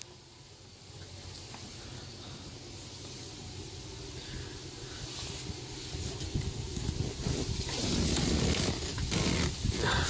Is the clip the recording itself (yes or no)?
yes